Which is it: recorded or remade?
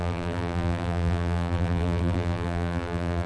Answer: remade